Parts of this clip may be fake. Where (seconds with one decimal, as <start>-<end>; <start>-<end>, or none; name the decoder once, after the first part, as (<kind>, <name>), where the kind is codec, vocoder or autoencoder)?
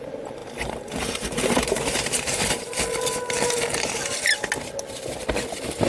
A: 0.4-2.8 (vocoder, BigVGAN v2)